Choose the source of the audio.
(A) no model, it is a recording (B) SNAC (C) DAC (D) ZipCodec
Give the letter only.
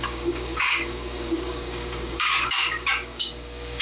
C